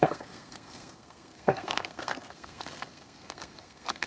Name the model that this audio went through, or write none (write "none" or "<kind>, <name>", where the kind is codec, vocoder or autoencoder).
codec, SNAC